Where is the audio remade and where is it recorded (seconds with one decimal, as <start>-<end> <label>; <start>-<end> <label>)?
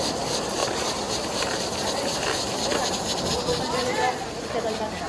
0.0-0.6 recorded; 0.6-3.3 remade; 3.3-5.1 recorded